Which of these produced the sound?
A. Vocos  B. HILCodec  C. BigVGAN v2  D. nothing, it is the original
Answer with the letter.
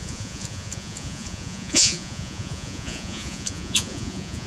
A